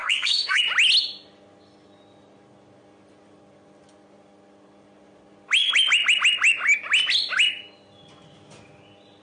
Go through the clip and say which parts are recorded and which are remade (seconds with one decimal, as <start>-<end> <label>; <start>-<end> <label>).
0.0-0.6 remade; 0.6-9.2 recorded